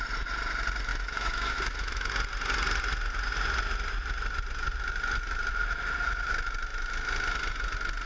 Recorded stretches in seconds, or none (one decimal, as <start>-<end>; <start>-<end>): 0.0-0.9; 2.1-8.1